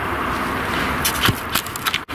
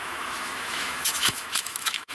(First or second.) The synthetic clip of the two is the second